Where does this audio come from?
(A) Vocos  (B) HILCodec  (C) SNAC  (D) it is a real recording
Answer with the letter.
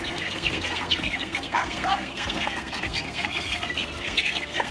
C